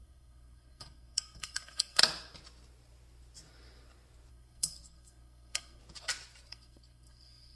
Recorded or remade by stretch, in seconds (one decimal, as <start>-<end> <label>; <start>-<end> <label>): 0.0-2.0 remade; 2.0-4.3 recorded; 4.3-5.8 remade; 5.8-6.5 recorded; 6.5-7.6 remade